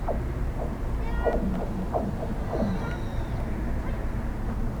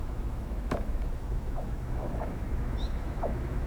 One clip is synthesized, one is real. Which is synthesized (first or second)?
second